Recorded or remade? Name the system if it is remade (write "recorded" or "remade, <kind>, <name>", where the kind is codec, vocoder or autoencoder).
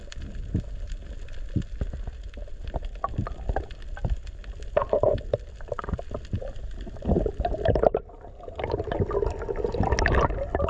recorded